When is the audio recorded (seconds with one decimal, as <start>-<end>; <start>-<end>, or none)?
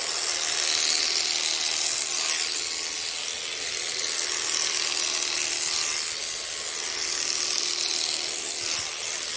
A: 0.0-9.4